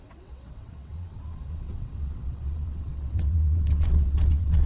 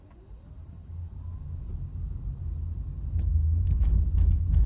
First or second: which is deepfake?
first